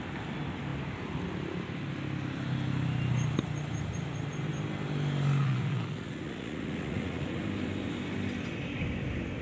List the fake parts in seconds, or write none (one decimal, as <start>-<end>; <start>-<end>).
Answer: 5.4-7.4